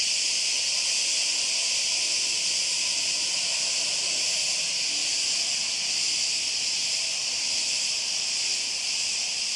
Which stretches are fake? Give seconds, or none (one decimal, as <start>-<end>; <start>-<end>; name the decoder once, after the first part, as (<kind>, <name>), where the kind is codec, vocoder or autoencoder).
6.8-8.5 (vocoder, BigVGAN v2)